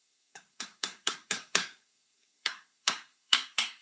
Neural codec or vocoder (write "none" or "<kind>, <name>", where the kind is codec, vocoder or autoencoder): codec, SNAC